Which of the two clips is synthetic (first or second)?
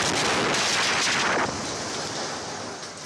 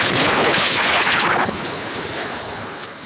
second